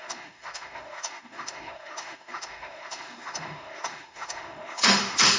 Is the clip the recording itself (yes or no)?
no